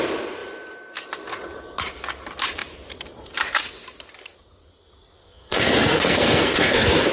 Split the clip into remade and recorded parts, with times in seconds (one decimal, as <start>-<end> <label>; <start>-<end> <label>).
0.0-5.2 recorded; 5.2-7.1 remade